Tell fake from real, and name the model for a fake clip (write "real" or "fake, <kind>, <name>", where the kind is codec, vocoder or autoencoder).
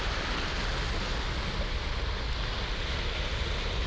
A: real